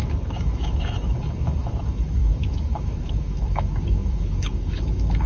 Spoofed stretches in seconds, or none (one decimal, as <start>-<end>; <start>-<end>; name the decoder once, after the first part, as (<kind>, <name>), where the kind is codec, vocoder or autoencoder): 0.0-5.3 (autoencoder, DAC-VAE)